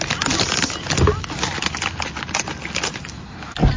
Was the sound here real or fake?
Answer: real